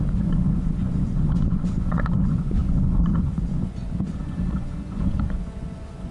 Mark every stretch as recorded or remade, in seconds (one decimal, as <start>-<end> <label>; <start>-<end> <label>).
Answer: 0.0-6.1 remade